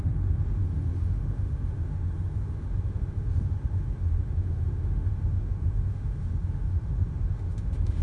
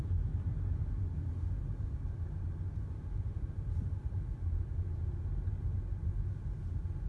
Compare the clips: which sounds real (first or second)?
second